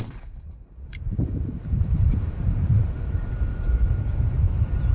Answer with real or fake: fake